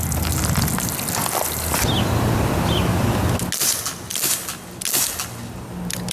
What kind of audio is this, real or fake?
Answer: real